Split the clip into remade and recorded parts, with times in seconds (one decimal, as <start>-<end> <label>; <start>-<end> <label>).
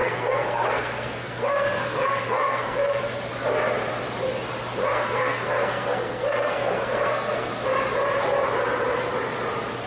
0.0-3.0 remade; 3.0-4.8 recorded; 4.8-7.5 remade; 7.5-9.9 recorded